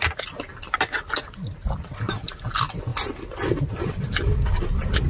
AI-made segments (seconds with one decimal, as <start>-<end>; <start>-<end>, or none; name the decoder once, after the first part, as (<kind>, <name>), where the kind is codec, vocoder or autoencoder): none